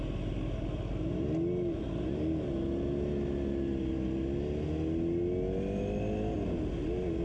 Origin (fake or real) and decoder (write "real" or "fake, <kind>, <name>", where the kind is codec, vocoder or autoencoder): real